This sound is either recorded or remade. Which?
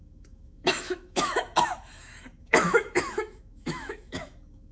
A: remade